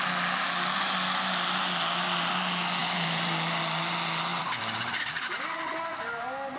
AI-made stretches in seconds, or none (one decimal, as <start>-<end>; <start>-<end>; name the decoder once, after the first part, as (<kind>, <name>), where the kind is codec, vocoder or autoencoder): 2.8-3.6 (vocoder, BigVGAN v2); 4.3-5.2